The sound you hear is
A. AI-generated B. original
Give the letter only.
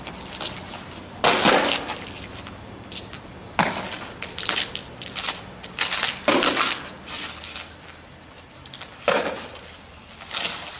B